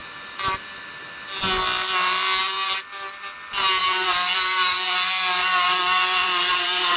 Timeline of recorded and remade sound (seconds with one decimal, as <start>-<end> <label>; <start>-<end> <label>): 0.0-3.8 recorded; 3.8-7.0 remade